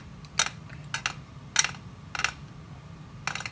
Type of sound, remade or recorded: recorded